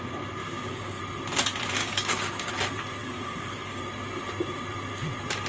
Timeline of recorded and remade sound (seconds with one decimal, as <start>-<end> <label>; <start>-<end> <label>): 0.0-0.4 recorded; 0.4-1.0 remade; 1.0-1.8 recorded; 1.8-2.5 remade; 2.5-3.0 recorded; 3.0-3.8 remade; 3.8-5.5 recorded